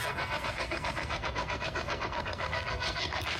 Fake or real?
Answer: fake